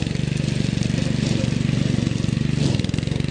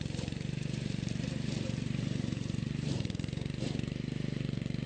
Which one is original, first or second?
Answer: first